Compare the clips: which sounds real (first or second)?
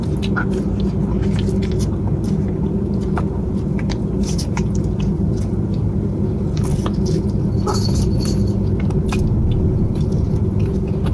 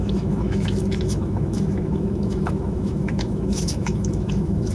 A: first